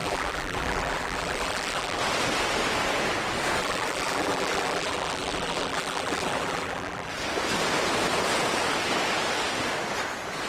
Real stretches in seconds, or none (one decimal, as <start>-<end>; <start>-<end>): 2.0-3.6; 7.1-10.5